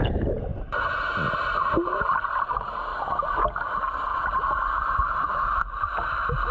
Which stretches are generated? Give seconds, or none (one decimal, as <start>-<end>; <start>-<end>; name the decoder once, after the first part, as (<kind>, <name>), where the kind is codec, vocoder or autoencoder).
0.5-1.0 (vocoder, BigVGAN v2)